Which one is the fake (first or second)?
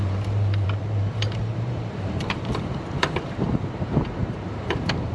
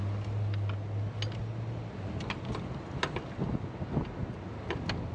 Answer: first